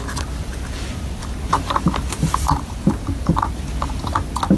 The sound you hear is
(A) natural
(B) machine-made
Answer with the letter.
B